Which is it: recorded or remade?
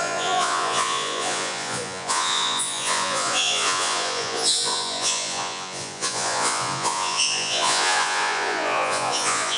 remade